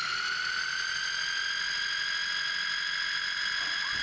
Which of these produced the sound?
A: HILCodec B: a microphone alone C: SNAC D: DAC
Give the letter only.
B